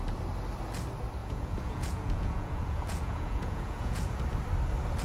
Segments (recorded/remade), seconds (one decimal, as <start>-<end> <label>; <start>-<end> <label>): 0.0-1.2 recorded; 1.2-4.2 remade; 4.2-5.0 recorded